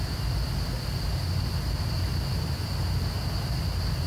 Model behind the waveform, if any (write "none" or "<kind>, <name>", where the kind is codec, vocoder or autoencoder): none